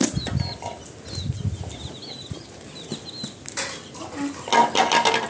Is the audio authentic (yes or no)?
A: yes